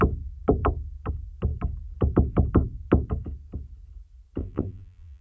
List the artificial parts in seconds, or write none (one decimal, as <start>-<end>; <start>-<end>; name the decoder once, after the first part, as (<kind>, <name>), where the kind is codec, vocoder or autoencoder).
4.4-5.2 (vocoder, BigVGAN v2)

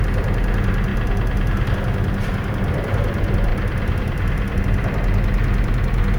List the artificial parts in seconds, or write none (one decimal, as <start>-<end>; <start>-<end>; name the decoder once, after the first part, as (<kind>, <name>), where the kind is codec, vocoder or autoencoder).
3.5-4.6 (vocoder, BigVGAN v2)

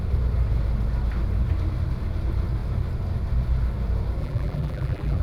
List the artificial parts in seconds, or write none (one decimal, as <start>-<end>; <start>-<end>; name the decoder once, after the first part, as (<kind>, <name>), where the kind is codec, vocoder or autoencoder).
4.2-5.2 (vocoder, BigVGAN v2)